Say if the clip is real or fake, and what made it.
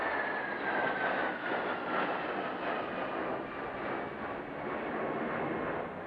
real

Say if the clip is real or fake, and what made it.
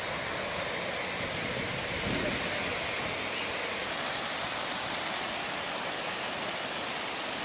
real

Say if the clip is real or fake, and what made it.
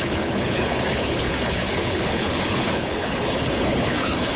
fake, codec, HILCodec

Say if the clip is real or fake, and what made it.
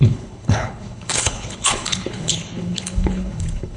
fake, codec, HILCodec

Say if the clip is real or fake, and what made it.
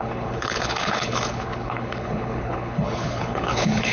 fake, codec, HILCodec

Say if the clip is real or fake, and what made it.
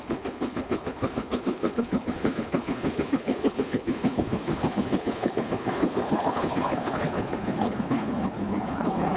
fake, codec, HILCodec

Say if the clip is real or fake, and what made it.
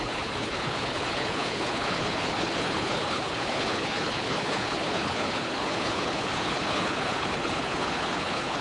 fake, codec, HILCodec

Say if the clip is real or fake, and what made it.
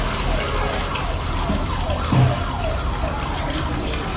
real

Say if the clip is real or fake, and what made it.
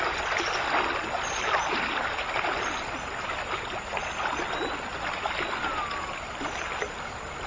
real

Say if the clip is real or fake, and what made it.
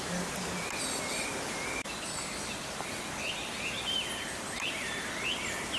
real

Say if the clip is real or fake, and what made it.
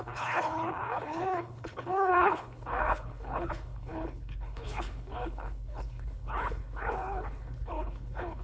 fake, codec, HILCodec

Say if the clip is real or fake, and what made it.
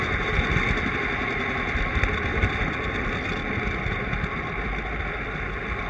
real